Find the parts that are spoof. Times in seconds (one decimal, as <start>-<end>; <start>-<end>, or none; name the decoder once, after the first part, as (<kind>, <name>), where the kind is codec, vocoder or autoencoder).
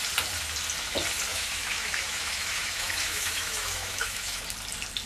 1.3-4.4 (autoencoder, DAC-VAE)